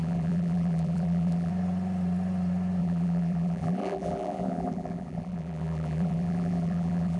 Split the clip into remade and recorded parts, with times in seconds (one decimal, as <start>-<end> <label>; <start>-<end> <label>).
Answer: 0.0-1.5 remade; 1.5-2.8 recorded; 2.8-7.2 remade